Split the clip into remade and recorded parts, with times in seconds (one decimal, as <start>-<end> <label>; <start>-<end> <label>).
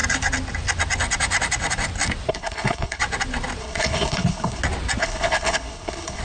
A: 0.0-2.3 recorded; 2.3-3.0 remade; 3.0-3.6 recorded; 3.6-4.6 remade; 4.6-5.0 recorded; 5.0-6.2 remade